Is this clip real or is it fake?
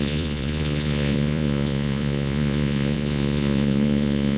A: fake